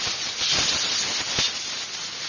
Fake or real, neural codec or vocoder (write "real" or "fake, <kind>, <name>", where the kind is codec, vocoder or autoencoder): real